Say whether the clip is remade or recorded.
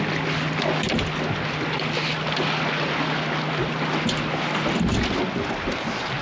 recorded